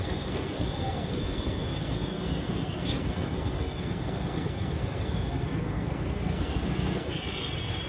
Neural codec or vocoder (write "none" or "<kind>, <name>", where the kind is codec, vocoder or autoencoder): codec, SNAC